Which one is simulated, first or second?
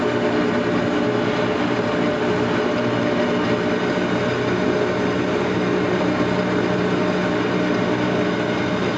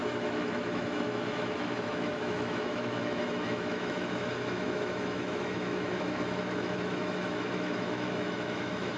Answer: second